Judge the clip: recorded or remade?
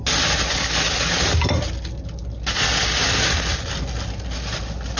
recorded